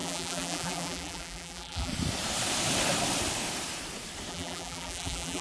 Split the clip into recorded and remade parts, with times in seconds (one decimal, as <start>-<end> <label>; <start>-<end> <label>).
0.0-1.9 remade; 1.9-4.3 recorded; 4.3-5.4 remade